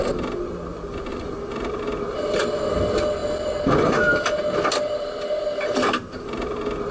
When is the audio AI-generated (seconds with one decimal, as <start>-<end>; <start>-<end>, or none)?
none